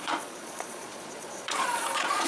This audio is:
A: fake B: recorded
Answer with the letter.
A